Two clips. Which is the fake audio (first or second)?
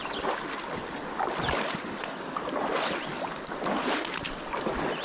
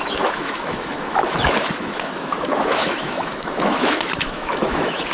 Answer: second